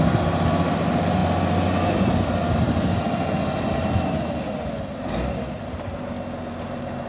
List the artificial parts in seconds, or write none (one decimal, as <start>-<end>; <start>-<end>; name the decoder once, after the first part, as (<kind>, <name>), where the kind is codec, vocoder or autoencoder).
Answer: none